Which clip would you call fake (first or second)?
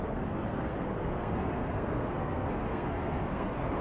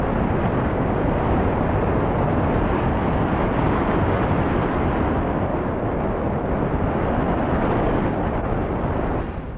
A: first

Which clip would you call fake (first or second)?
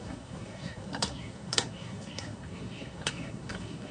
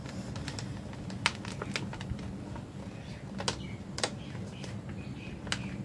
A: first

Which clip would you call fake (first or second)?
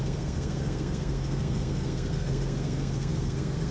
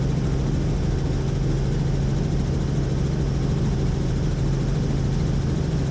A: first